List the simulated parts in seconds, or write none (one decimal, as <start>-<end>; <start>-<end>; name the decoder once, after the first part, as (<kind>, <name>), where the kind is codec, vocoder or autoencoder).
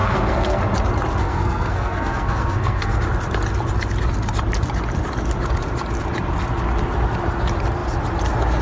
0.0-0.6 (codec, SNAC); 1.2-3.0